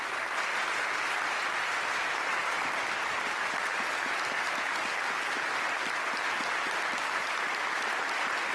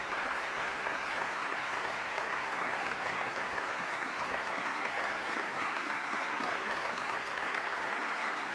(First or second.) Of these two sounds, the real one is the first